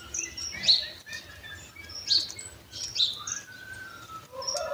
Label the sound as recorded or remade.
recorded